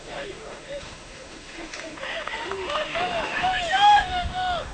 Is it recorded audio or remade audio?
remade